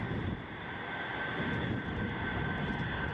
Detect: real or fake real